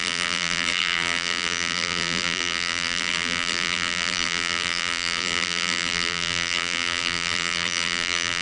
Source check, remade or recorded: remade